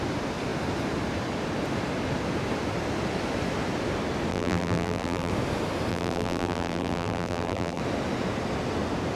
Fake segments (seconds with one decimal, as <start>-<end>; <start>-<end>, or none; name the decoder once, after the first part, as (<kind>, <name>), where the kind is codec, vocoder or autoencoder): 4.3-5.3 (vocoder, BigVGAN v2); 5.9-7.8

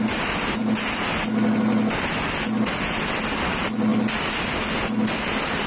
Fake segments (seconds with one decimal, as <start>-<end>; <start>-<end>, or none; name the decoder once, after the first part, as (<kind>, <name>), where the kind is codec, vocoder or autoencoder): none

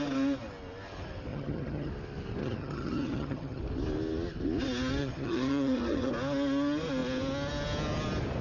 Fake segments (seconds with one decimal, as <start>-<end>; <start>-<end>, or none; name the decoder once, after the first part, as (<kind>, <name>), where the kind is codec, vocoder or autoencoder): 1.3-1.9 (vocoder, HiFi-GAN); 2.4-3.6; 5.0-6.1

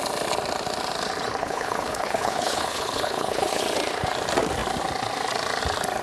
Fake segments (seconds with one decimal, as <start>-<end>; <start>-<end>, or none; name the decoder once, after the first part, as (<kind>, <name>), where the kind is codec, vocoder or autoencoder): 1.4-3.6 (codec, HILCodec)

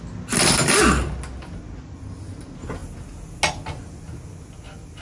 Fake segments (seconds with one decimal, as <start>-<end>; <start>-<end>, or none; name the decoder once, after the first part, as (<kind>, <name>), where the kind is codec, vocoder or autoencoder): none